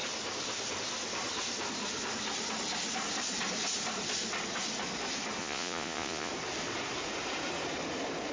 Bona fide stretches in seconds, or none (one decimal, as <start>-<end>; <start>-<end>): 0.0-5.4; 6.3-8.3